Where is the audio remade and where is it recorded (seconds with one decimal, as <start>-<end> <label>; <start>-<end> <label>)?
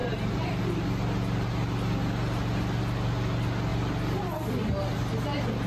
0.0-0.6 remade; 0.6-5.7 recorded